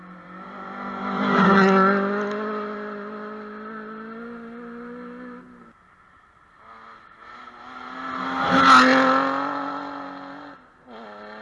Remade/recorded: recorded